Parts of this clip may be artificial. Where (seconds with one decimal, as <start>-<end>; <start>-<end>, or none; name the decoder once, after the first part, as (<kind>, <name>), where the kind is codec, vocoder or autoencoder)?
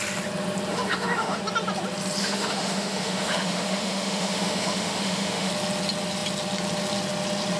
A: 0.7-1.4 (autoencoder, DAC-VAE); 2.2-5.5